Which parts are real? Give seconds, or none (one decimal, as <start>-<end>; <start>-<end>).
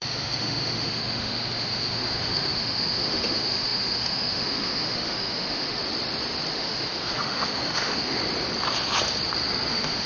5.8-6.5; 8.2-9.7